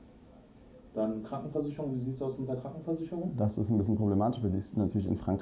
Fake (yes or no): yes